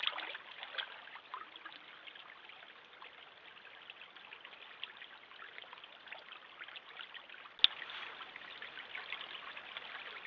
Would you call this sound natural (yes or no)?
yes